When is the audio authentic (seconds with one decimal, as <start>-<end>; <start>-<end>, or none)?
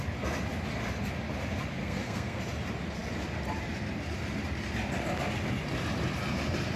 0.0-1.8; 2.4-6.8